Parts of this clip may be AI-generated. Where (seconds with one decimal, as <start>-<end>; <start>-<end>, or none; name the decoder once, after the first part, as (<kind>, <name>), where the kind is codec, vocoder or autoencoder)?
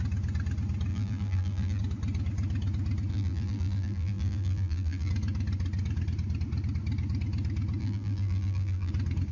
0.9-1.8 (vocoder, BigVGAN v2); 3.1-5.1; 7.8-8.9